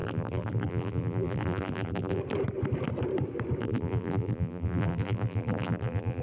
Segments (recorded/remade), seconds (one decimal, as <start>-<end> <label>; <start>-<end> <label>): 0.0-2.2 remade; 2.2-3.6 recorded; 3.6-6.2 remade